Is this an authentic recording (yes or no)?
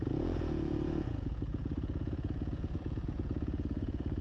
no